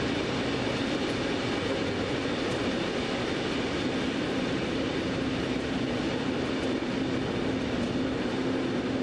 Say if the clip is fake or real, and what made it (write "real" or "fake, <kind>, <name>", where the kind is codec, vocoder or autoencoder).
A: real